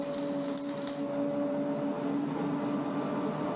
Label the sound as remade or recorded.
recorded